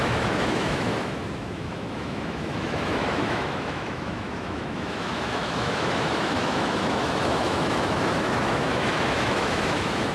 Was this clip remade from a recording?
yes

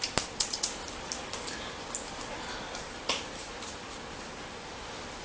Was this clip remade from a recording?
no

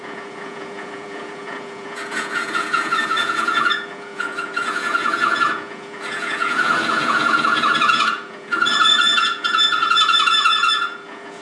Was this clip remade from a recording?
yes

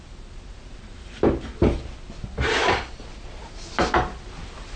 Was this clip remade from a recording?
no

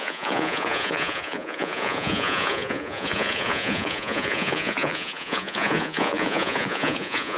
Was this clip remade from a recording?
yes